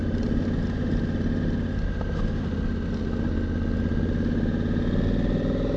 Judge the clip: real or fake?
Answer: real